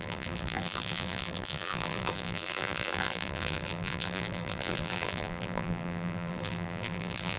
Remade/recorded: remade